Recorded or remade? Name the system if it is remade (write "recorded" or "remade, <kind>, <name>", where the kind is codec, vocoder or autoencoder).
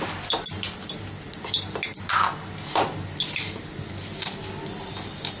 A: recorded